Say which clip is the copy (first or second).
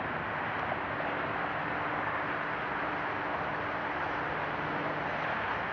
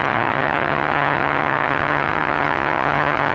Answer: second